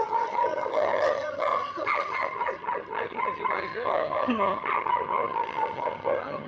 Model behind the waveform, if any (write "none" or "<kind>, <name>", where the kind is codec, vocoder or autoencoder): vocoder, HiFi-GAN